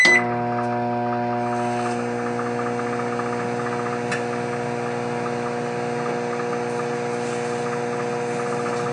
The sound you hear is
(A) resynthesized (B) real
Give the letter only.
B